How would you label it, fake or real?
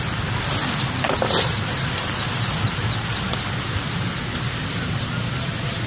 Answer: real